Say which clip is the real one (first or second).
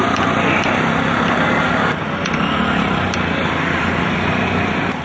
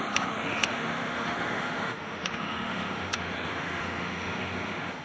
first